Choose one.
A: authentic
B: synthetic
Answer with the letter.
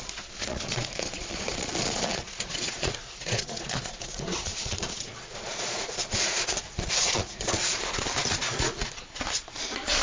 B